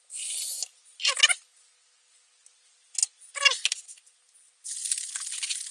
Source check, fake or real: real